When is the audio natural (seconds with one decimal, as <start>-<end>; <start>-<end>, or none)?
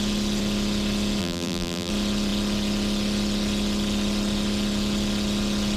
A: 0.0-1.2; 1.9-5.8